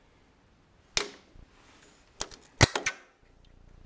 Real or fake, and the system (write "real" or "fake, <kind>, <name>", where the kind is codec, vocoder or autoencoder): real